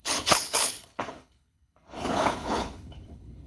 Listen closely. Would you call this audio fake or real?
fake